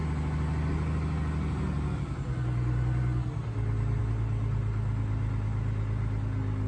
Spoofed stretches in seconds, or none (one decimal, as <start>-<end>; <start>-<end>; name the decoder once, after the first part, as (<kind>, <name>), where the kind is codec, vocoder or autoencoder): none